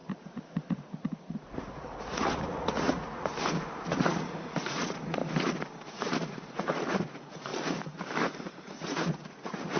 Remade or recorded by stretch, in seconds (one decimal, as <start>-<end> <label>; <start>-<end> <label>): 0.0-3.3 remade; 3.3-3.8 recorded; 3.8-5.2 remade; 5.2-5.9 recorded; 5.9-7.5 remade; 7.5-8.4 recorded; 8.4-9.8 remade